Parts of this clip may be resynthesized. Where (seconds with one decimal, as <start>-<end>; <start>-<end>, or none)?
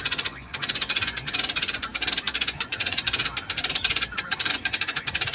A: 0.0-1.9; 2.4-3.2; 3.9-5.3